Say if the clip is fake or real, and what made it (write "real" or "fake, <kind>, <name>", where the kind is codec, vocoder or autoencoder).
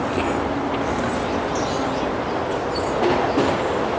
real